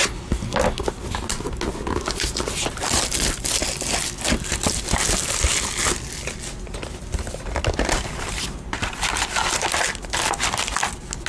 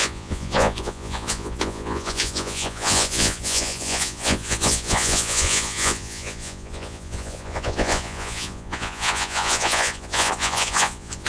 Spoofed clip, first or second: second